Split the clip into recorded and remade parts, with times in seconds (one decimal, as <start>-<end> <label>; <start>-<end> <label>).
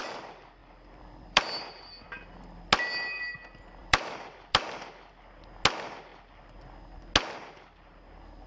0.0-0.6 recorded; 0.6-1.4 remade; 1.4-3.8 recorded; 3.8-5.1 remade; 5.1-8.5 recorded